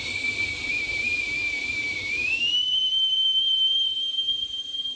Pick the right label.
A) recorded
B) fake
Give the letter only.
B